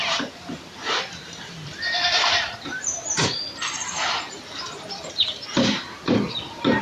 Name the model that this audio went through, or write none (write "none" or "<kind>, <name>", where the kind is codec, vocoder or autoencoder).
vocoder, BigVGAN v2